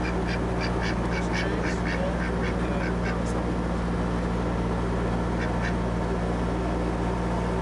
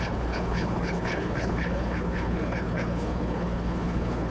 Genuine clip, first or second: first